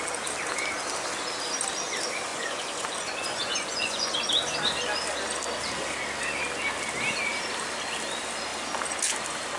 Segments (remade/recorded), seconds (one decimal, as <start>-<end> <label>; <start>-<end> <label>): 0.0-2.3 recorded; 2.3-4.1 remade; 4.1-9.6 recorded